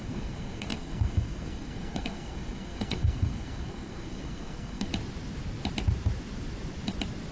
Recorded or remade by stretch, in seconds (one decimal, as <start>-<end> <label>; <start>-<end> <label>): 0.0-4.9 remade; 4.9-7.3 recorded